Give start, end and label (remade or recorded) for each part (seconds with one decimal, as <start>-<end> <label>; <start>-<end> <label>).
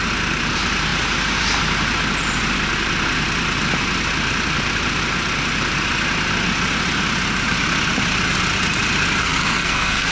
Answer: 0.0-9.2 recorded; 9.2-10.1 remade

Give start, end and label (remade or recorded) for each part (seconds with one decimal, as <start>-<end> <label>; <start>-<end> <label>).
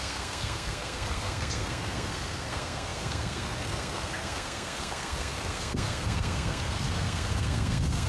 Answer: 0.0-8.1 remade